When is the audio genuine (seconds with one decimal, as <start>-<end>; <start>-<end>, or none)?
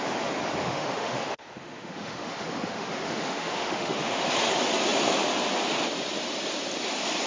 0.0-0.6; 4.3-7.3